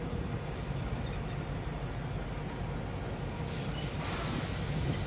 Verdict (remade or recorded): recorded